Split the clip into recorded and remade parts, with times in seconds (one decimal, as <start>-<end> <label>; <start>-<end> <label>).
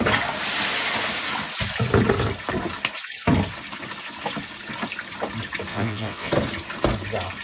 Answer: 0.0-5.7 recorded; 5.7-6.3 remade; 6.3-7.4 recorded